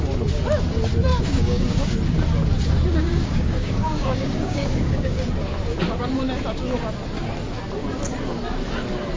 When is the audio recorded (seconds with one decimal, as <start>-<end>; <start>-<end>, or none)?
0.0-1.1; 1.9-3.0; 5.2-9.2